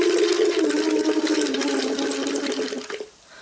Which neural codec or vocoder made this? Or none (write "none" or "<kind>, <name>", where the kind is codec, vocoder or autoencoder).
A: none